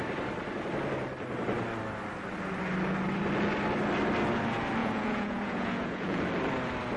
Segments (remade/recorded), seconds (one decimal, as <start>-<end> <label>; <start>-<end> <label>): 0.0-4.8 recorded; 4.8-6.3 remade; 6.3-7.0 recorded